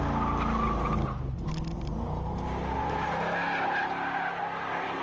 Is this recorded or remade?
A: recorded